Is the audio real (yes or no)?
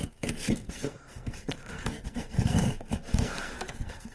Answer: no